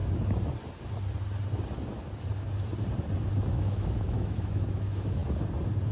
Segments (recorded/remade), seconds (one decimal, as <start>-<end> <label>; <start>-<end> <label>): 0.0-3.5 recorded; 3.5-5.2 remade; 5.2-5.9 recorded